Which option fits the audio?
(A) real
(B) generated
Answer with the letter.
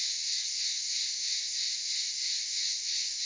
B